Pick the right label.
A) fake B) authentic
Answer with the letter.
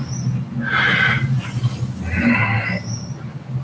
B